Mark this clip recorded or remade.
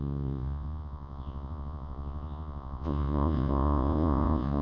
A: remade